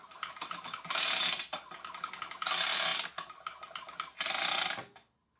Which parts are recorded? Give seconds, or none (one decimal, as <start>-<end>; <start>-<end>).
0.0-5.4